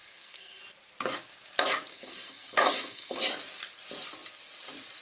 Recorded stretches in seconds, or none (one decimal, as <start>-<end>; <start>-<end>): 0.6-1.9; 3.2-5.0